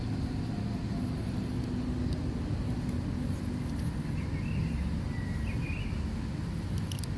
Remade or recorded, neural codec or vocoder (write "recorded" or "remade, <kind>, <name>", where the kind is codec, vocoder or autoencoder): recorded